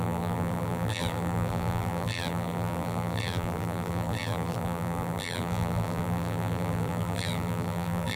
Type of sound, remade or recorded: remade